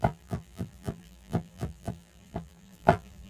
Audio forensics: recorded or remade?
remade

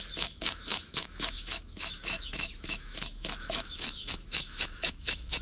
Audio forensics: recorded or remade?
remade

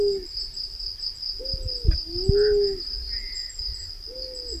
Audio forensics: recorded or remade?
recorded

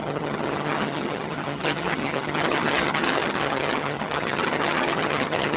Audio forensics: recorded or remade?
remade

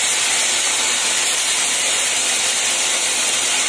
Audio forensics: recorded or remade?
recorded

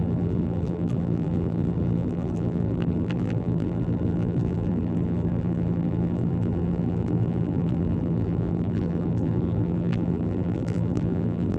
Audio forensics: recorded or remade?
remade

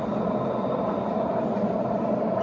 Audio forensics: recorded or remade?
recorded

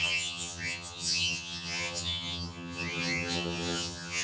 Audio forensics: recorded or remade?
remade